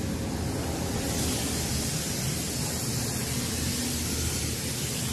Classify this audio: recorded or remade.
recorded